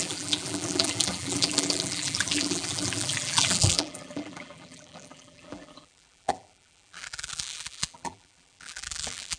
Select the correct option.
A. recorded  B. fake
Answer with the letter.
B